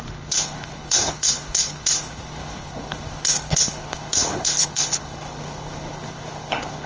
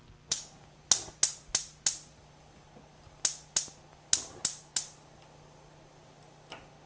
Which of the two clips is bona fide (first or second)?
second